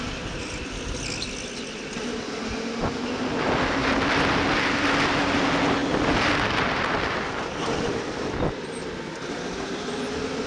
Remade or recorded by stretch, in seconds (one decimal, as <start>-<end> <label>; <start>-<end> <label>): 0.0-10.5 recorded